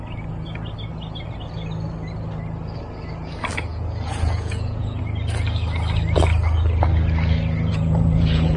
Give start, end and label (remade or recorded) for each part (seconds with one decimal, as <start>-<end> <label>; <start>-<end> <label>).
0.0-3.7 recorded; 3.7-5.0 remade; 5.0-7.7 recorded; 7.7-8.6 remade